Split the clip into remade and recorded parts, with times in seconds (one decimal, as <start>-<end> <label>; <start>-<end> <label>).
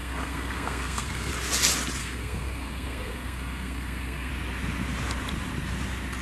0.0-1.3 remade; 1.3-2.0 recorded; 2.0-4.3 remade; 4.3-6.2 recorded